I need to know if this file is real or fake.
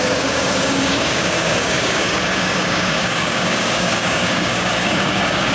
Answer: fake